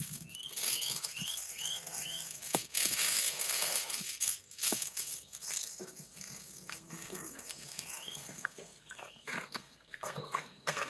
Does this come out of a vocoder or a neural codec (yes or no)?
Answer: yes